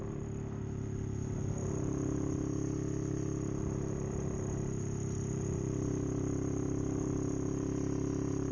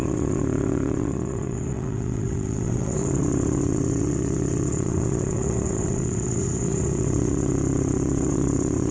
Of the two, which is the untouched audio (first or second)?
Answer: first